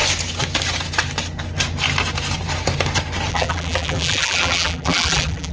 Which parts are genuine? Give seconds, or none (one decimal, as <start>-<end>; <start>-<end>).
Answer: 0.0-3.3